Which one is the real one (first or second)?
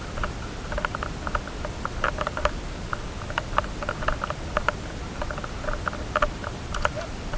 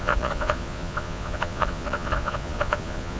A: first